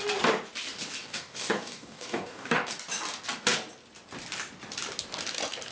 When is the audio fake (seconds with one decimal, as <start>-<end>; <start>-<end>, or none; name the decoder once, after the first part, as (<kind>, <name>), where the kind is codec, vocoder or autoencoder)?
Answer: 1.0-2.7 (codec, DAC)